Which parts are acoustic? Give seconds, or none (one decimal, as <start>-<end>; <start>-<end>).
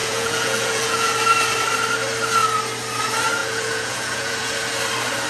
1.1-3.4; 4.7-5.3